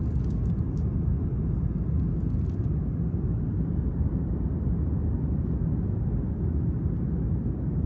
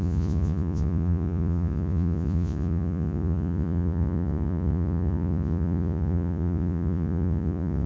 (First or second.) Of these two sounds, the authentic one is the first